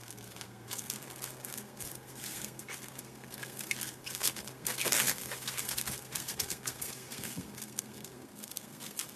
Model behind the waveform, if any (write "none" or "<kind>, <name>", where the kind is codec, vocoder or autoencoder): codec, SNAC